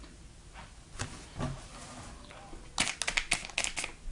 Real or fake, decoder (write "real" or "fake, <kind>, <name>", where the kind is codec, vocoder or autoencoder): real